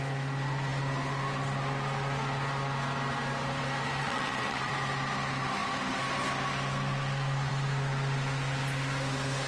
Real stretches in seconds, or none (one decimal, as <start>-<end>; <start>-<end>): 0.0-4.0; 4.7-9.5